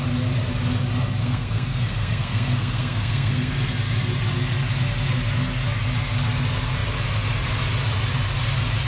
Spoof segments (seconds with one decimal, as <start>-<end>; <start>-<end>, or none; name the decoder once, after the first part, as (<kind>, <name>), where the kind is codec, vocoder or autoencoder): 1.2-3.5 (codec, SNAC)